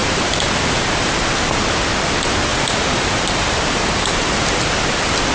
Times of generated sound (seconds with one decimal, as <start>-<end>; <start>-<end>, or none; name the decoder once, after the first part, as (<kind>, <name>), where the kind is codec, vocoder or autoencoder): 0.0-1.1 (vocoder, BigVGAN v2); 2.5-4.3